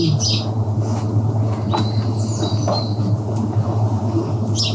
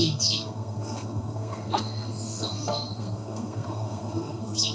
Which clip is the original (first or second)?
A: first